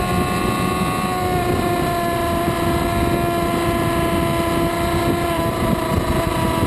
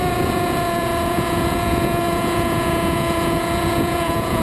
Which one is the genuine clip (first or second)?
first